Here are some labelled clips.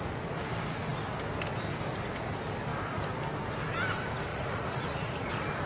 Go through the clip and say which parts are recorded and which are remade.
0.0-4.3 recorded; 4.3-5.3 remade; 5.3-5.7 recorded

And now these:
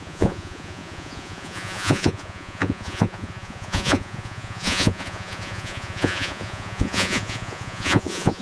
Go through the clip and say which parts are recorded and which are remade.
0.0-8.4 remade

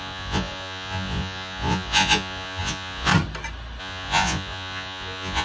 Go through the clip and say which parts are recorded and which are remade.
0.0-3.1 remade; 3.1-3.8 recorded; 3.8-5.4 remade

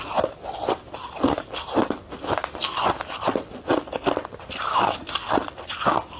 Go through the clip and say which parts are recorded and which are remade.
0.0-6.2 recorded

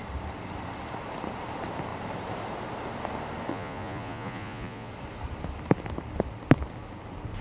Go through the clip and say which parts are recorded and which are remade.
0.0-3.5 recorded; 3.5-4.9 remade; 4.9-7.4 recorded

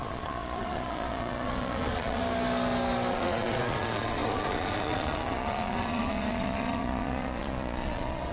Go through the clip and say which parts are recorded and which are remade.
0.0-2.2 remade; 2.2-3.1 recorded; 3.1-8.3 remade